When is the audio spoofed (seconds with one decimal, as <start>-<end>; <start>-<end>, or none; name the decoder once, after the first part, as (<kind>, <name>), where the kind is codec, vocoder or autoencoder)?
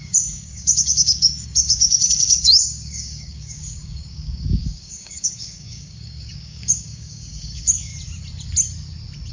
0.0-7.9 (codec, DAC)